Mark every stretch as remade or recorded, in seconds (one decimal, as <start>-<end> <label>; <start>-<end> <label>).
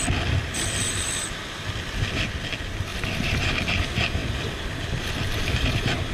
0.0-6.1 recorded